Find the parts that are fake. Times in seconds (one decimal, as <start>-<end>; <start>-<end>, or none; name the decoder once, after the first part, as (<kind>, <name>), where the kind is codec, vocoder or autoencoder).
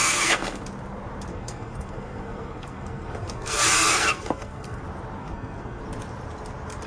0.0-0.6 (codec, SNAC); 1.3-4.8; 5.2-5.8